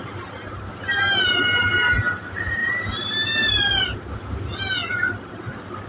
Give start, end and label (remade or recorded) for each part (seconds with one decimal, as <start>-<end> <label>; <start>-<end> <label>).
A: 0.0-2.6 recorded; 2.6-5.3 remade; 5.3-5.9 recorded